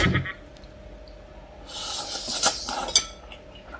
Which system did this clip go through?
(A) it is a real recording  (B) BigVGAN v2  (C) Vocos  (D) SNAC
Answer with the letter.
A